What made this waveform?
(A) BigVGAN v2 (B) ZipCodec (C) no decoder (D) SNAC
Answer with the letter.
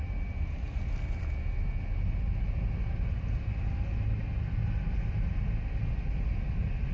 C